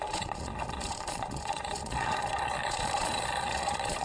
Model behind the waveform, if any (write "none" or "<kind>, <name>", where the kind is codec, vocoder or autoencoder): vocoder, Vocos